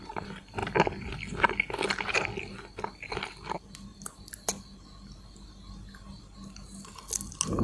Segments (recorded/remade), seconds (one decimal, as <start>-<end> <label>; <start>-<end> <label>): 0.0-7.6 recorded